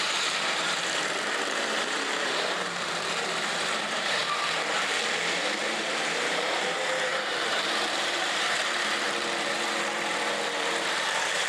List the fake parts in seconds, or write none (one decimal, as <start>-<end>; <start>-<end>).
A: 0.0-4.2; 5.6-11.5